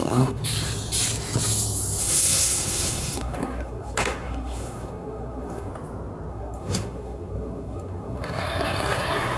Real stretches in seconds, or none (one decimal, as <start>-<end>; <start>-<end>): 0.4-2.0; 5.7-6.3